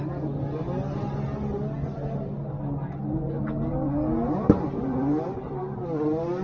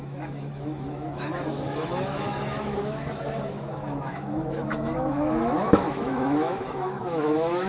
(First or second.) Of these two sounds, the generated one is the second